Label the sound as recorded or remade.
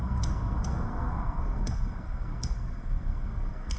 remade